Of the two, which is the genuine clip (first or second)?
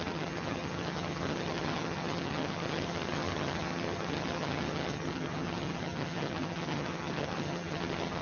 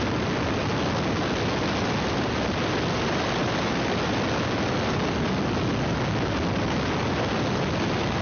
second